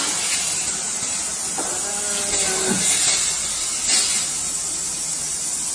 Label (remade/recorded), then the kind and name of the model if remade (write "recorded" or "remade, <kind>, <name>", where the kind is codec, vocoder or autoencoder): recorded